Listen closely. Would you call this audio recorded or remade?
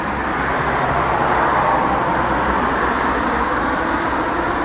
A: recorded